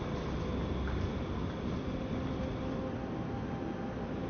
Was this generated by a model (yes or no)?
no